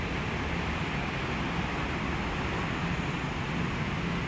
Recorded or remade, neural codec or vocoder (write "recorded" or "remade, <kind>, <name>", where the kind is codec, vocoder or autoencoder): recorded